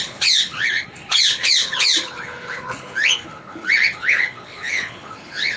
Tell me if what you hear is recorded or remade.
remade